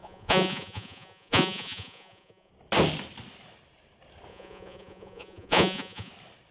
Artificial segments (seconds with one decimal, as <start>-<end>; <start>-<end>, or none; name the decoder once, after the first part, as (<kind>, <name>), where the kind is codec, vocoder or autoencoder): 0.0-2.5 (vocoder, Vocos); 4.3-6.1